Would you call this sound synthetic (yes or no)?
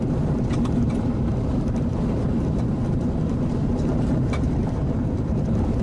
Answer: yes